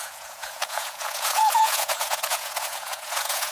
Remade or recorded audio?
remade